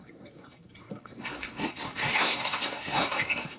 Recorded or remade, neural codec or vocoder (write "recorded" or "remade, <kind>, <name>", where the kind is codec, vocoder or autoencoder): remade, codec, SNAC